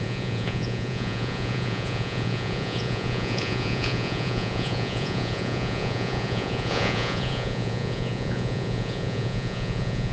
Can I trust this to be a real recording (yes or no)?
no